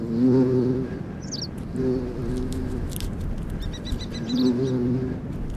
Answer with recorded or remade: recorded